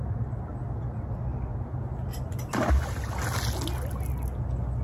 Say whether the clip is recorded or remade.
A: recorded